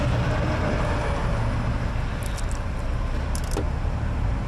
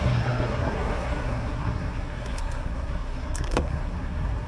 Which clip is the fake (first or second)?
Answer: second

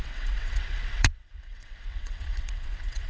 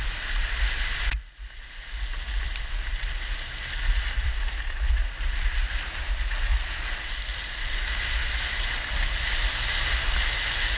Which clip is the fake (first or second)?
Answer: first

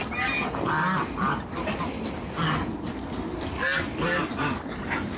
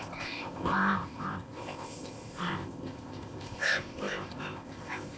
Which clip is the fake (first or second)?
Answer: second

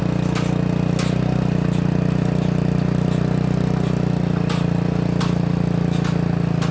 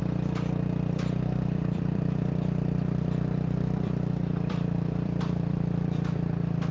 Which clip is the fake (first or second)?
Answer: second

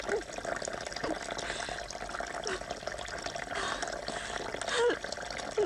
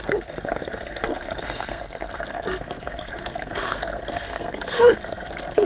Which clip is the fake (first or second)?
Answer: second